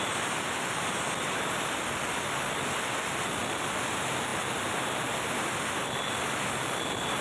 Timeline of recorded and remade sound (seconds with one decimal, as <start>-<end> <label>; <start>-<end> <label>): 0.0-7.2 recorded